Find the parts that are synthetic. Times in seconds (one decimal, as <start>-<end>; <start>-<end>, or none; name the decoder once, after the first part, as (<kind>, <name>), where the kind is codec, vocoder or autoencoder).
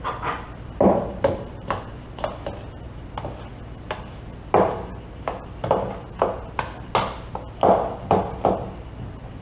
none